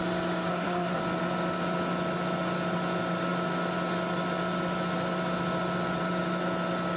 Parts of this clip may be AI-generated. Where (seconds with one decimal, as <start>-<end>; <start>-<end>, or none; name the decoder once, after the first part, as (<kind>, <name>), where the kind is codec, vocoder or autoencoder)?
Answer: 0.5-1.0 (codec, SNAC)